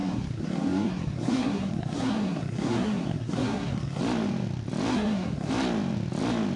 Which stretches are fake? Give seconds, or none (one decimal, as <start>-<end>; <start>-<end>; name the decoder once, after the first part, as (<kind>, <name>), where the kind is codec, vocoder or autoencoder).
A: 0.0-4.0 (codec, SNAC); 4.9-5.5